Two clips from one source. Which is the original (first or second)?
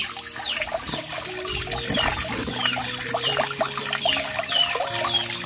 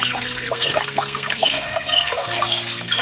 first